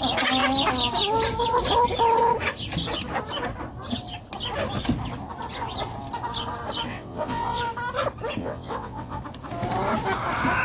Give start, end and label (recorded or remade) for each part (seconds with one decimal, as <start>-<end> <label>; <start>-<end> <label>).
0.0-6.9 recorded; 6.9-7.6 remade; 7.6-8.4 recorded; 8.4-9.2 remade; 9.2-10.6 recorded